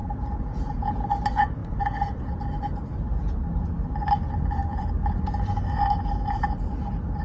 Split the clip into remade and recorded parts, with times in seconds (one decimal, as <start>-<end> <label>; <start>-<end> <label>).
0.0-0.9 remade; 0.9-1.6 recorded; 1.6-2.4 remade; 2.4-7.2 recorded